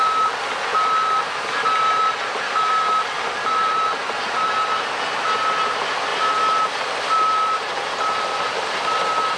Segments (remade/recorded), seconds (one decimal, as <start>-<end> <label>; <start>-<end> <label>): 0.0-0.7 recorded; 0.7-4.7 remade; 4.7-6.1 recorded; 6.1-8.7 remade; 8.7-9.4 recorded